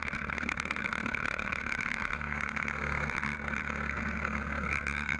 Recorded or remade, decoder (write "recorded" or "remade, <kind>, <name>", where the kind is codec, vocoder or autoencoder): remade, codec, SNAC